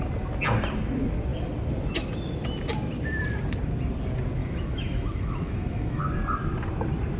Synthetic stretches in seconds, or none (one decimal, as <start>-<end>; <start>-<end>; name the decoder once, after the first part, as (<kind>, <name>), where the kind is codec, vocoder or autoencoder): 4.4-6.0 (autoencoder, DAC-VAE)

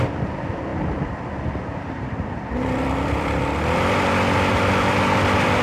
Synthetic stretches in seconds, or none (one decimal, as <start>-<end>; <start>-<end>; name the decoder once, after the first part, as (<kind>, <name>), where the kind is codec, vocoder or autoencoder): 0.7-4.1 (vocoder, BigVGAN v2)

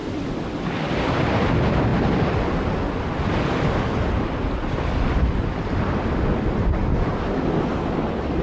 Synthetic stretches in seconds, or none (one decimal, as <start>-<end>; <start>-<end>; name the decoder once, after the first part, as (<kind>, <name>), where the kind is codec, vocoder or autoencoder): 0.9-1.9 (vocoder, BigVGAN v2); 3.6-6.8